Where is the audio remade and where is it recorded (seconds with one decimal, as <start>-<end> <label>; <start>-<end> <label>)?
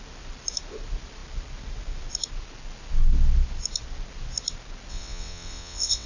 0.0-4.9 recorded; 4.9-6.1 remade